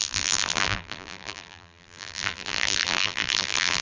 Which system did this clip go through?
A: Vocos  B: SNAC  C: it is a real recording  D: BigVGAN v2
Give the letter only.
D